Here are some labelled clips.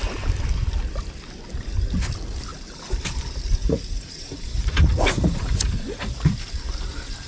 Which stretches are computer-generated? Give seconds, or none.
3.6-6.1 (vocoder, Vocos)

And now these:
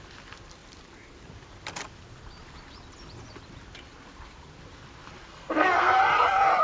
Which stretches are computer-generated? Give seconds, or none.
5.3-6.0 (codec, SNAC)

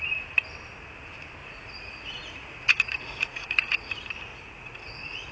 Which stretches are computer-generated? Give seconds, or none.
1.4-3.9 (vocoder, Vocos); 4.3-5.3

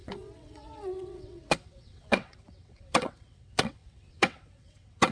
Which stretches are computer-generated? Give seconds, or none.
0.0-5.1 (vocoder, WaveNeXt)

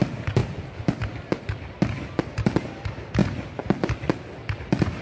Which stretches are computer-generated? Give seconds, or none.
none

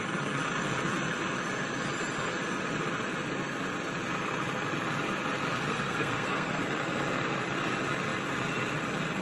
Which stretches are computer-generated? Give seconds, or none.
5.7-6.6 (codec, SNAC)

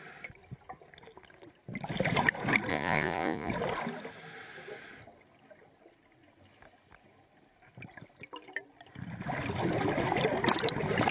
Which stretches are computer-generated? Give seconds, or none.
2.7-3.5 (vocoder, Vocos)

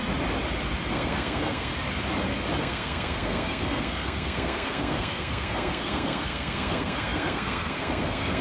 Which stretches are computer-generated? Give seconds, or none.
0.9-1.7 (codec, SNAC); 2.6-8.4